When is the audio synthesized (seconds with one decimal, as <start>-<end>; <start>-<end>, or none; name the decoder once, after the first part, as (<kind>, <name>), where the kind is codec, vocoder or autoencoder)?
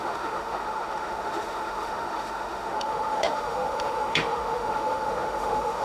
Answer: 0.0-5.8 (autoencoder, DAC-VAE)